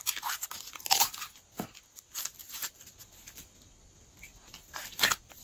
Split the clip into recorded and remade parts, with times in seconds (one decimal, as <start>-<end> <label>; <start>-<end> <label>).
0.0-2.4 recorded; 2.4-3.0 remade; 3.0-5.4 recorded